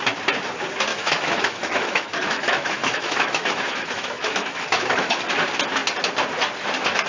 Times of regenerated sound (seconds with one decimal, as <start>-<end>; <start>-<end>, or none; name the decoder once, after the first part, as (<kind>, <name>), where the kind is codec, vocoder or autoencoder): 0.9-5.2 (autoencoder, DAC-VAE)